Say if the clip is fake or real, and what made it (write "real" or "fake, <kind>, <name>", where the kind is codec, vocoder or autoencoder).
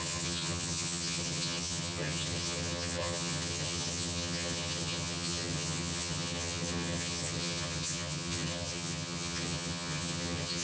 fake, vocoder, HiFi-GAN